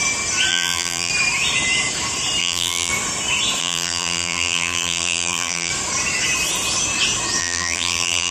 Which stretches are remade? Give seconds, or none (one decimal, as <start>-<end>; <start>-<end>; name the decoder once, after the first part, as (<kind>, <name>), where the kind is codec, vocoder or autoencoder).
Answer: 0.5-1.1 (vocoder, BigVGAN v2); 2.4-2.9; 3.6-5.7; 7.4-8.3